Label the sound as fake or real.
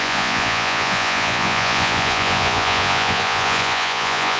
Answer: fake